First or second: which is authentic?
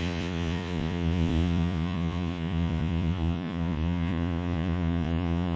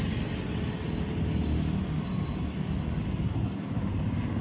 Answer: second